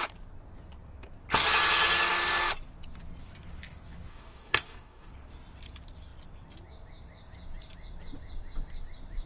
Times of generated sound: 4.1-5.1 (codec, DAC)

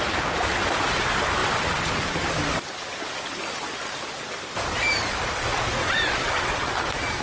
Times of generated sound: 5.8-6.7 (vocoder, WaveNeXt)

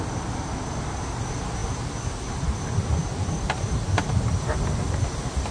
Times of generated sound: none

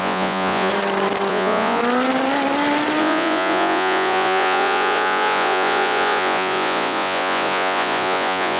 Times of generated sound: 0.0-0.7 (vocoder, Vocos); 1.3-1.8; 3.0-8.6

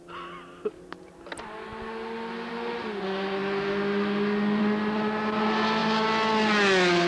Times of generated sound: none

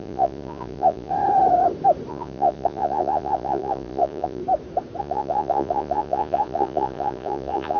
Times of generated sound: 0.0-1.1 (vocoder, Vocos); 2.1-4.4; 5.0-7.8

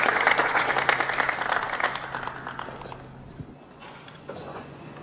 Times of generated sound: 0.0-0.7 (vocoder, Vocos); 3.7-5.0

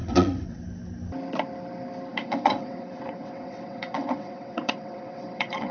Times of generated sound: 0.0-0.6 (vocoder, WaveNeXt); 2.1-5.7